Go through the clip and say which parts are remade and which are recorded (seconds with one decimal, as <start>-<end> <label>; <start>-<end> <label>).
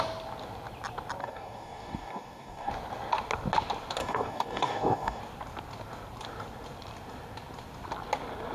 0.0-1.2 recorded; 1.2-2.7 remade; 2.7-4.0 recorded; 4.0-5.2 remade; 5.2-8.5 recorded